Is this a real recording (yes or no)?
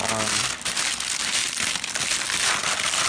yes